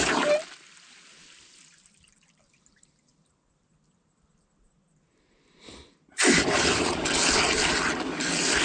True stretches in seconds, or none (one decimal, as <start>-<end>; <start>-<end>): 0.0-8.6